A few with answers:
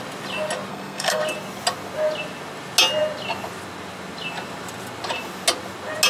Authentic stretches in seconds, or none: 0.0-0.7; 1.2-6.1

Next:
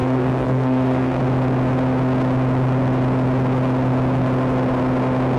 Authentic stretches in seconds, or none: 1.2-5.4

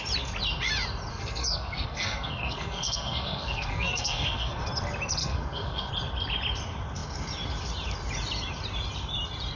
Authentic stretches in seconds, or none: 0.0-1.1; 4.6-5.2; 5.9-9.6

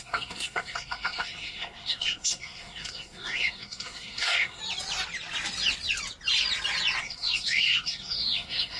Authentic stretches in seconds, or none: 4.6-7.0

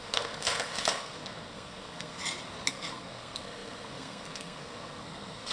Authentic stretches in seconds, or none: 2.2-2.7